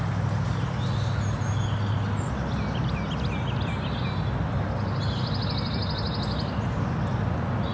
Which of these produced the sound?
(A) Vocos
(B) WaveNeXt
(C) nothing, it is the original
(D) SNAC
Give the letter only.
C